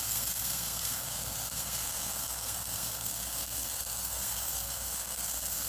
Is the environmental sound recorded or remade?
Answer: remade